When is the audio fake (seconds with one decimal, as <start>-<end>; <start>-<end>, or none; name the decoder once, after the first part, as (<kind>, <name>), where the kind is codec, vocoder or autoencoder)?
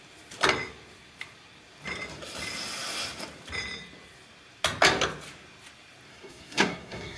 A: 6.1-7.2 (codec, SNAC)